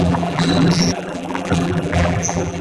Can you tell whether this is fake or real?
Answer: fake